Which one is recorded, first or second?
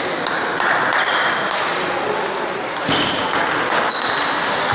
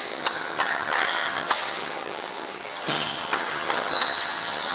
first